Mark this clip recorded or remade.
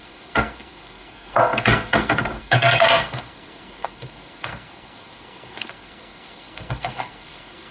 remade